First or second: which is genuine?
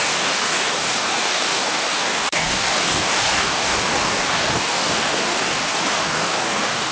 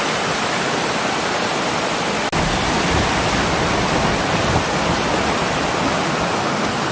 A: second